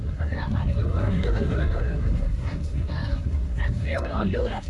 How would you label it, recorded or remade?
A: remade